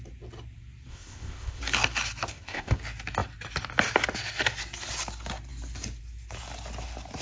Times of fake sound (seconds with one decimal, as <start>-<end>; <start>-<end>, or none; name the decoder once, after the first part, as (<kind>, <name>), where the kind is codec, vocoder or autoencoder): 0.9-1.6 (codec, ZipCodec); 2.3-2.8